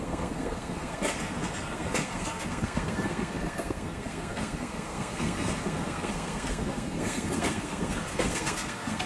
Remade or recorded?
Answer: remade